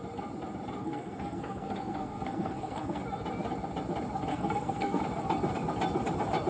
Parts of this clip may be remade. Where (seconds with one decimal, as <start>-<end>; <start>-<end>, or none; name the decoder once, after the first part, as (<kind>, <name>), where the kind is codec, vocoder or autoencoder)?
0.8-3.0 (codec, SNAC); 4.3-5.0